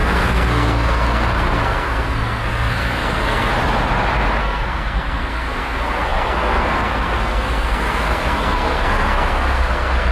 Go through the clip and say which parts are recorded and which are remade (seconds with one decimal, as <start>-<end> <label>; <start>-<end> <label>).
0.0-3.5 remade; 3.5-4.4 recorded; 4.4-10.1 remade